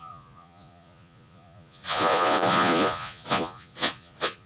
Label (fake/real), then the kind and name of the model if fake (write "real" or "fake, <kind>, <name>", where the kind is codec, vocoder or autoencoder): fake, vocoder, Vocos